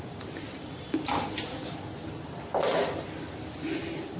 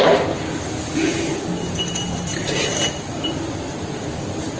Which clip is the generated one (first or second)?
first